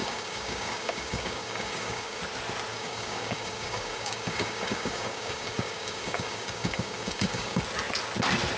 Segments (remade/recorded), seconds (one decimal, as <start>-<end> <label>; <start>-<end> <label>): 0.0-2.2 remade; 2.2-2.7 recorded; 2.7-7.6 remade; 7.6-8.6 recorded

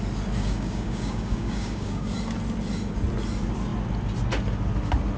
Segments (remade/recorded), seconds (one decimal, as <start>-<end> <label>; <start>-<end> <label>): 0.0-0.4 recorded; 0.4-2.1 remade; 2.1-5.2 recorded

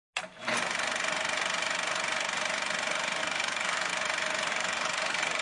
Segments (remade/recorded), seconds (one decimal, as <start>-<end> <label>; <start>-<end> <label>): 0.0-3.2 recorded; 3.2-3.9 remade; 3.9-4.5 recorded; 4.5-5.4 remade

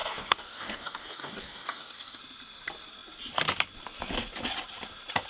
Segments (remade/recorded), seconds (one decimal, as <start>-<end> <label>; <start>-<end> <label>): 0.0-2.2 remade; 2.2-5.3 recorded

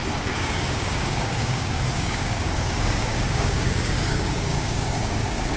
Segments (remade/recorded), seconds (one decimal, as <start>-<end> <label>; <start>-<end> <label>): 0.0-5.6 remade